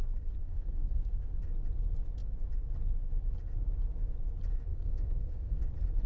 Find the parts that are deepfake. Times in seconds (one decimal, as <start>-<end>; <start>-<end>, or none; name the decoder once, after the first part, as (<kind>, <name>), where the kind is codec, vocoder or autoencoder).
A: 0.4-1.3 (codec, SNAC); 4.7-5.6